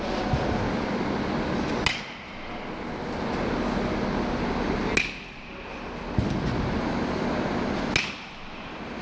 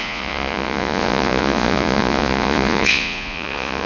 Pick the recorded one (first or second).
first